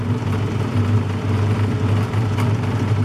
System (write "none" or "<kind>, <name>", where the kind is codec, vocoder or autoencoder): none